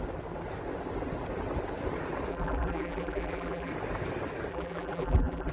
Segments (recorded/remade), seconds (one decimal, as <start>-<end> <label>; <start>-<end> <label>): 0.0-2.3 recorded; 2.3-3.7 remade; 3.7-4.5 recorded; 4.5-5.5 remade